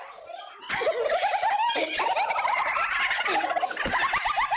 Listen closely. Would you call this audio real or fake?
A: real